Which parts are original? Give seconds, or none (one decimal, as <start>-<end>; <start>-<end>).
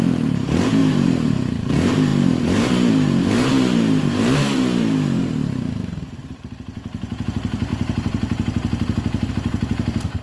none